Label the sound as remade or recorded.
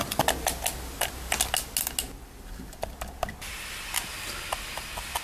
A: recorded